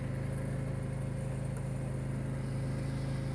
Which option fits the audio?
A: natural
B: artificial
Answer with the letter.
A